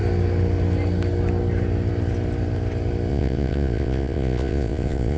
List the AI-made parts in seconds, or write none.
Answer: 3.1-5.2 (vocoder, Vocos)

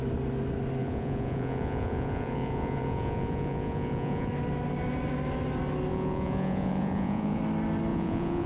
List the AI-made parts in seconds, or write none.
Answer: 0.8-4.3 (vocoder, Vocos); 5.9-7.4; 7.9-8.5

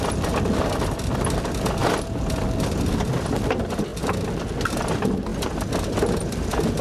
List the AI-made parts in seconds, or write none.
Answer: none